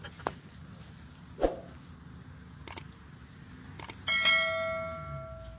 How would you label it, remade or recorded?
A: recorded